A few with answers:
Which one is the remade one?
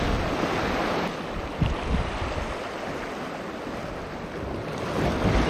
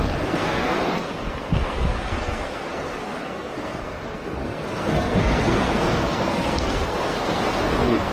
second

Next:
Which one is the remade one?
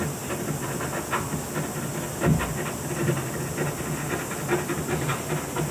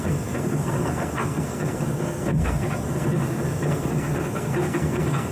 second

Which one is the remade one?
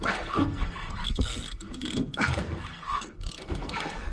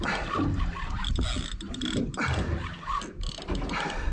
first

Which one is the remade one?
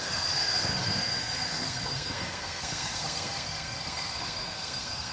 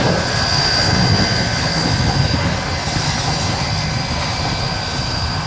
first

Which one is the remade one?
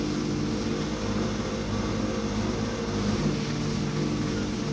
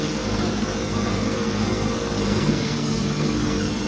second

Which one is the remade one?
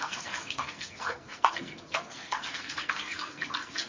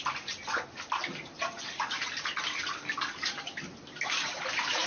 first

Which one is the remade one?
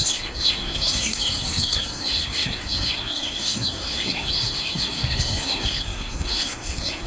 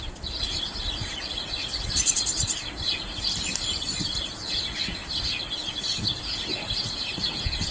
first